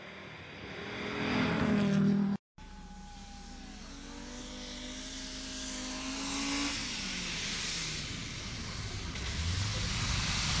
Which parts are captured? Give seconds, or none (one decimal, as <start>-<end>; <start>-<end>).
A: 0.0-6.8; 7.6-10.6